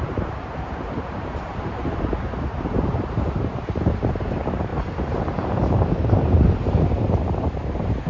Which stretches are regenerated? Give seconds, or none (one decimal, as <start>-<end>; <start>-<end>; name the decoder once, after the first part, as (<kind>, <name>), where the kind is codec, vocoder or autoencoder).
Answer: 0.0-8.1 (vocoder, BigVGAN v2)